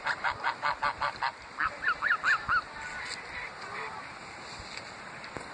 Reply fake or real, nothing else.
real